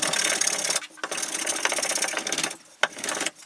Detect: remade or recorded recorded